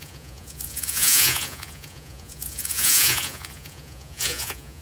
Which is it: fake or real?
fake